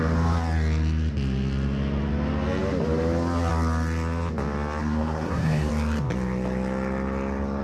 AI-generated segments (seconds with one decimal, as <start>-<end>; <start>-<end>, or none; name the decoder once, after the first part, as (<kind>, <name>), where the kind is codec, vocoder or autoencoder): 4.8-5.7 (codec, SNAC)